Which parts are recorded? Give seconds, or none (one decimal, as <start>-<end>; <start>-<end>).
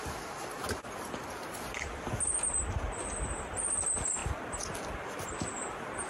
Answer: 0.0-6.1